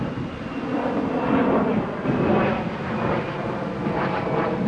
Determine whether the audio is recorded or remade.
recorded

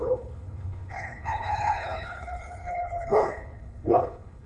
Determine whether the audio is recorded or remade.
remade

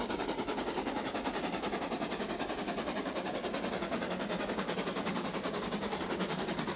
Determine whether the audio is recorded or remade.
remade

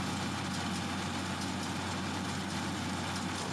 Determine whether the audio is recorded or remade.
recorded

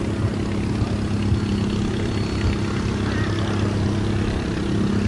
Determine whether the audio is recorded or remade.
recorded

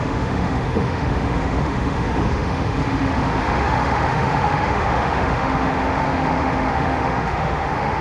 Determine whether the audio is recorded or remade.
remade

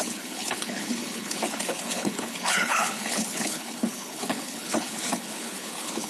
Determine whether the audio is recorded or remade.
remade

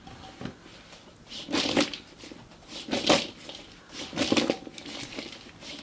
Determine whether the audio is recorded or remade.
recorded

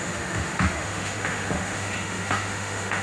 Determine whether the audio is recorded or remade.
remade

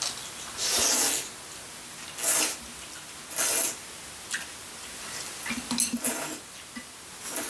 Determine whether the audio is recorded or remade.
recorded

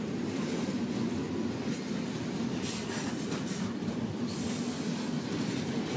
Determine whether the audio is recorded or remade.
recorded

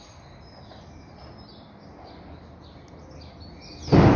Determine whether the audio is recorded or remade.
recorded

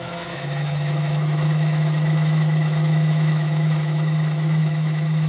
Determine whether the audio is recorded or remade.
remade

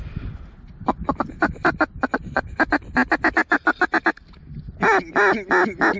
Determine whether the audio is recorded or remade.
recorded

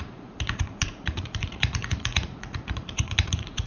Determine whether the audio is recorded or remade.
remade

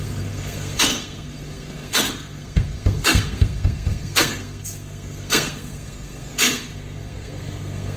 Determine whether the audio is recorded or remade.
remade